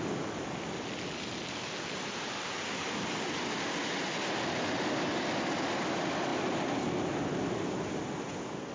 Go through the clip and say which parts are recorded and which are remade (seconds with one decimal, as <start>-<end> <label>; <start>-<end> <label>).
0.0-8.7 recorded